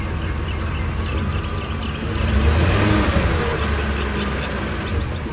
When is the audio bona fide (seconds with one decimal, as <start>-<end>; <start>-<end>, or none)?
0.0-5.3